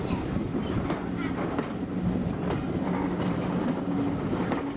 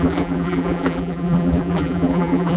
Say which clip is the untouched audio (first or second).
first